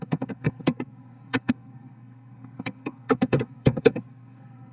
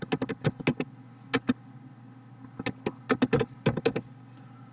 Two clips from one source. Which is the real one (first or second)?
second